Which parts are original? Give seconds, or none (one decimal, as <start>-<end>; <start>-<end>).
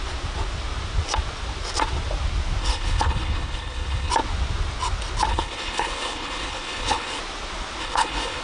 0.0-2.6; 4.1-5.3; 7.2-7.8